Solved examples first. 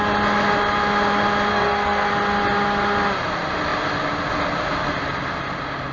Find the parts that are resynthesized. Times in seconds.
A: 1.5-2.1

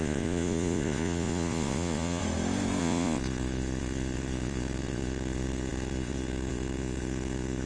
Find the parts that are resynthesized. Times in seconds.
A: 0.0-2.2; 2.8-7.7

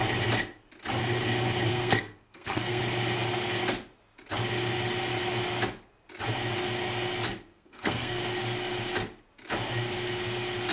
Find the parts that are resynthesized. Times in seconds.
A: 1.7-2.8; 7.5-8.2

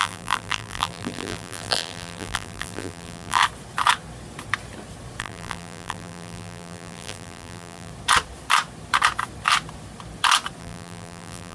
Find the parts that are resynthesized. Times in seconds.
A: 0.0-3.4; 5.2-7.9; 10.6-11.5